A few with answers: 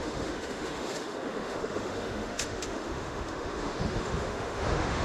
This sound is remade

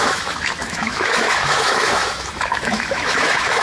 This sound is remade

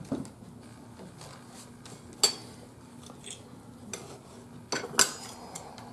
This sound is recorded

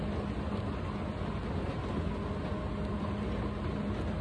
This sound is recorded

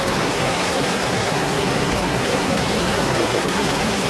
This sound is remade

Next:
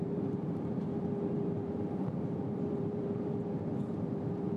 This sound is remade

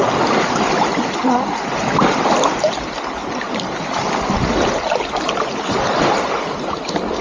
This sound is recorded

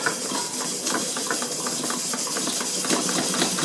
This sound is recorded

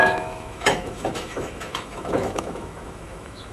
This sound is remade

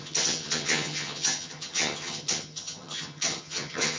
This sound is remade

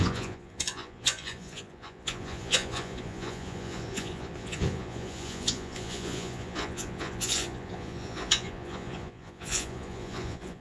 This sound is remade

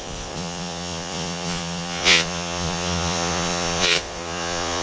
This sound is remade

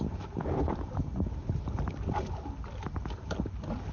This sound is recorded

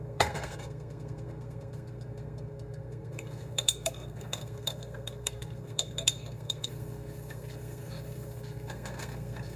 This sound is remade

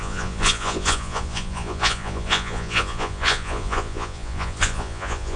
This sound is remade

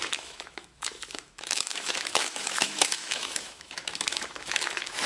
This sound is remade